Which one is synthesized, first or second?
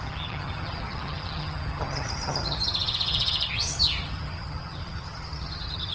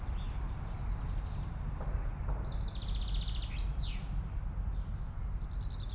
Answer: first